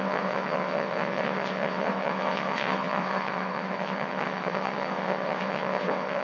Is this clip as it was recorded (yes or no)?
no